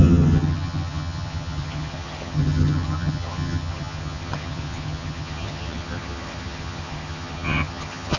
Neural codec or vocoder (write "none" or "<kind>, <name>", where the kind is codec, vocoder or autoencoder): vocoder, HiFi-GAN